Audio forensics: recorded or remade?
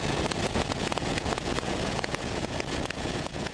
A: remade